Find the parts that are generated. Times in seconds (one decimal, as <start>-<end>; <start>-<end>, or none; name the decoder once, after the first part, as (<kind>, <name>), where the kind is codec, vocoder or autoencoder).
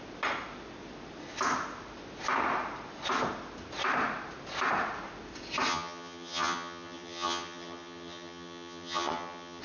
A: 5.7-9.6 (vocoder, HiFi-GAN)